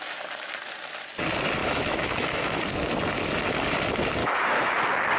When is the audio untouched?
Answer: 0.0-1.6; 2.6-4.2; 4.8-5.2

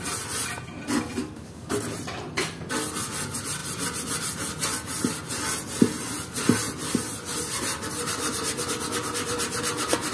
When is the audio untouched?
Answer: 0.0-1.2; 1.7-10.1

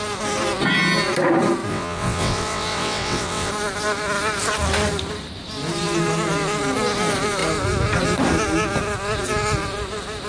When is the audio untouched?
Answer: 0.0-1.7; 3.5-10.3

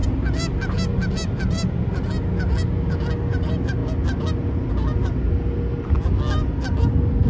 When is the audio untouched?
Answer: 0.0-7.3

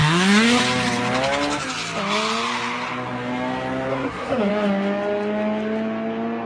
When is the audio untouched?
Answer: 0.6-3.9; 4.5-6.5

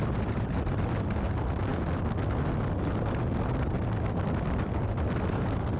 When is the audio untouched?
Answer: 0.0-5.8